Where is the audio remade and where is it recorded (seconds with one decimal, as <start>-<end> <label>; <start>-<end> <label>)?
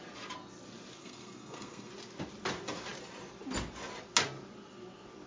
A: 0.0-1.0 recorded; 1.0-1.9 remade; 1.9-5.3 recorded